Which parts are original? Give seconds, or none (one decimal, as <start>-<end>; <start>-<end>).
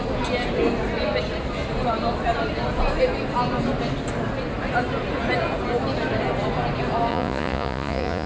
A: 0.0-7.1